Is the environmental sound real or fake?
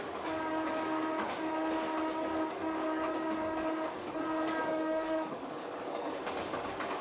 fake